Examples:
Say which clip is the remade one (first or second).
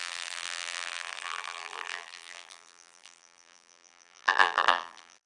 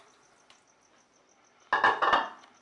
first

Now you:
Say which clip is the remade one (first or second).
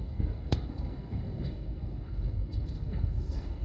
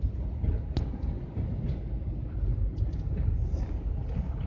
first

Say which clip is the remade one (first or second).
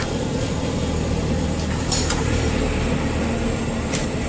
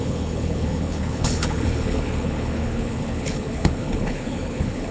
second